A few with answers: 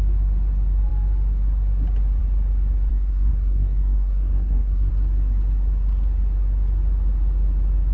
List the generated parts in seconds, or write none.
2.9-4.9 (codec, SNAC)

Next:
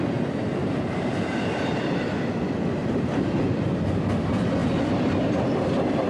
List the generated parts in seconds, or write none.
0.6-2.0 (vocoder, BigVGAN v2); 2.8-4.0; 4.6-6.1

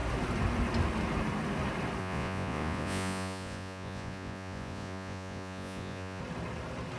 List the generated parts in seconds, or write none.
2.0-6.2 (vocoder, Vocos)

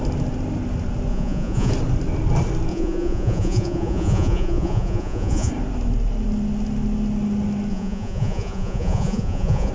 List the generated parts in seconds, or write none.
1.1-1.7 (vocoder, Vocos); 2.7-5.5; 7.7-9.7